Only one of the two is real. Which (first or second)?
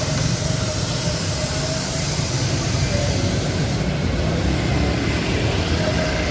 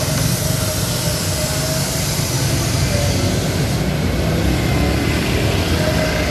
second